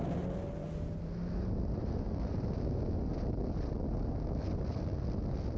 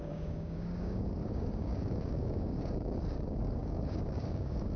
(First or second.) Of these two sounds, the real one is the first